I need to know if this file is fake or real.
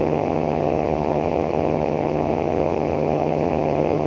fake